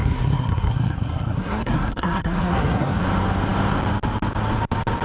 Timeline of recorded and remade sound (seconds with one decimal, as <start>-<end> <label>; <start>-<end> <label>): 0.0-3.0 remade; 3.0-5.0 recorded